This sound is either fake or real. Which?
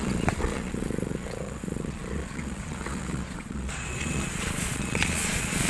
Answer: fake